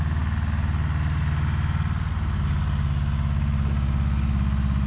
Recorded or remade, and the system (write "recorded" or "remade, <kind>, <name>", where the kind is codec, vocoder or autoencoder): recorded